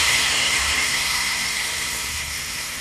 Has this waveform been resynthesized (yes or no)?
yes